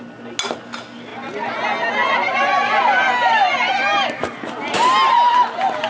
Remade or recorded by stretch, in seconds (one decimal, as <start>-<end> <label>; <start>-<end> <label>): 0.0-5.9 recorded